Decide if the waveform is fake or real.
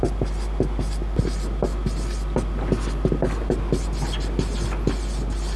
real